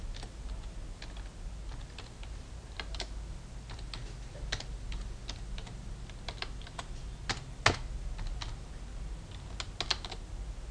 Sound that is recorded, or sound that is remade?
recorded